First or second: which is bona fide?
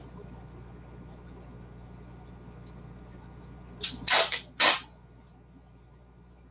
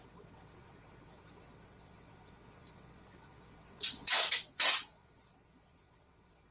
first